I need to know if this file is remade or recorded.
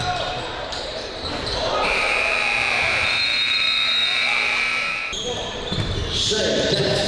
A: remade